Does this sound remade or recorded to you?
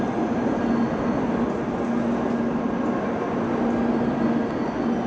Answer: recorded